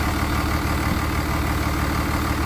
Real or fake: real